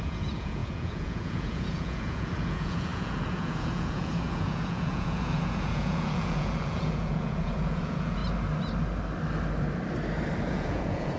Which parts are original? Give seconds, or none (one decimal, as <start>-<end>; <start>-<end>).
8.2-10.5